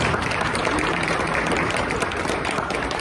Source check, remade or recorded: remade